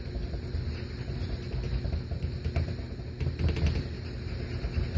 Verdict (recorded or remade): recorded